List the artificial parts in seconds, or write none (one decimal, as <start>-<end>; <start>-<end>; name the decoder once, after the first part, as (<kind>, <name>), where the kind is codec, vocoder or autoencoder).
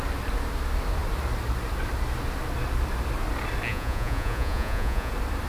3.7-5.1 (vocoder, Vocos)